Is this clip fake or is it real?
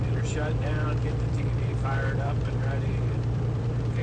fake